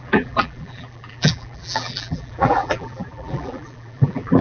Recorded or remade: remade